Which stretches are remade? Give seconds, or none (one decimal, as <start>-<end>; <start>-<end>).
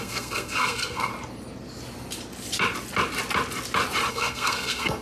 0.0-1.1; 4.1-5.0